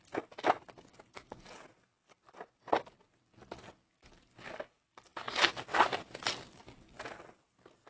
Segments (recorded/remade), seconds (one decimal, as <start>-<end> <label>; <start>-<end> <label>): 0.0-7.9 recorded